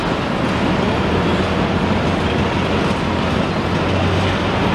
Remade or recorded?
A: recorded